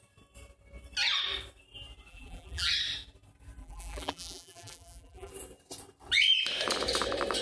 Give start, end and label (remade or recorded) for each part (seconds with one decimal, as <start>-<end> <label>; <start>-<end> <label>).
0.0-2.1 recorded; 2.1-2.7 remade; 2.7-3.6 recorded; 3.6-5.3 remade; 5.3-7.4 recorded